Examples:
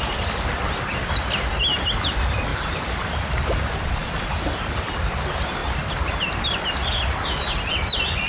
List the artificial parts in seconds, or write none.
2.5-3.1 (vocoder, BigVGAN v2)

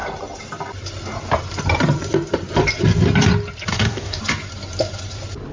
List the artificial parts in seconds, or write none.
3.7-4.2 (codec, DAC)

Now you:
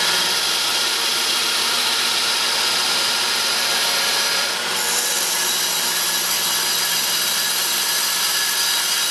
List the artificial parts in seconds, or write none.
none

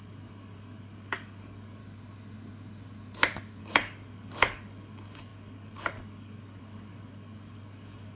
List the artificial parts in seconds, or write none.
0.0-1.8 (codec, DAC); 3.6-8.2

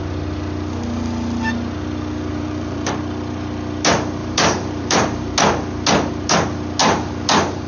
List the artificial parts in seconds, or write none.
2.3-3.0 (vocoder, BigVGAN v2); 4.2-5.3; 6.8-7.7

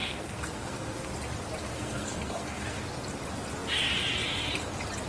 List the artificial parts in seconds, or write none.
0.0-1.1 (codec, SNAC); 1.6-2.8

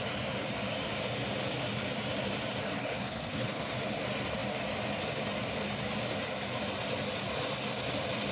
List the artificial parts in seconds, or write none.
2.8-3.6 (codec, HILCodec)